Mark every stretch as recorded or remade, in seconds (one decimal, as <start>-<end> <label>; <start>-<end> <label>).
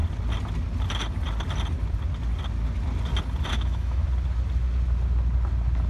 0.0-3.5 recorded; 3.5-4.0 remade; 4.0-5.9 recorded